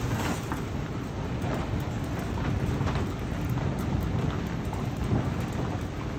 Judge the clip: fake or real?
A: real